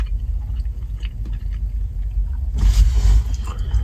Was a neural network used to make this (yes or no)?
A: no